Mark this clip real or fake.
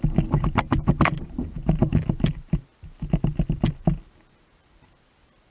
real